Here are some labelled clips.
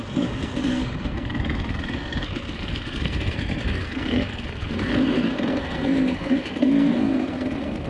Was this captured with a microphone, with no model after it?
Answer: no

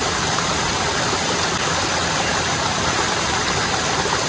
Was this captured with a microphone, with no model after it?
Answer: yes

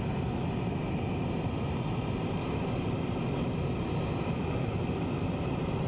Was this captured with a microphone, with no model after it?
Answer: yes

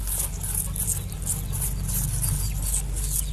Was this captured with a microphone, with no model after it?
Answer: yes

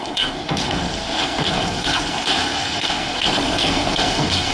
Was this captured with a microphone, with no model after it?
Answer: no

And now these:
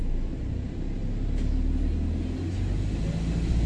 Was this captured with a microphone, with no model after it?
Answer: yes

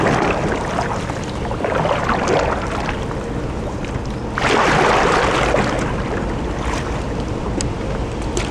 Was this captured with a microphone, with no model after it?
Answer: yes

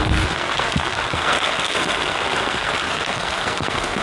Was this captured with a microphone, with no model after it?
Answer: no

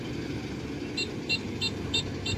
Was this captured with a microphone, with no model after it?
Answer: yes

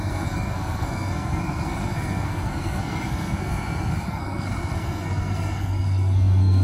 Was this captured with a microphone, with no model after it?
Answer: no